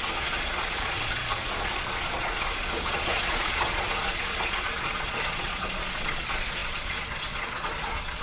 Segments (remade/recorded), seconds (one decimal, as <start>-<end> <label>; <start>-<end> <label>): 0.0-8.2 remade